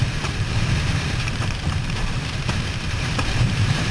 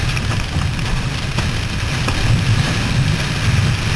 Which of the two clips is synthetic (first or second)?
first